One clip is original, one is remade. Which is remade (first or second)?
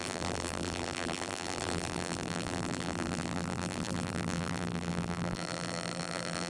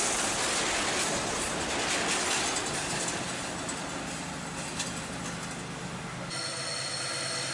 first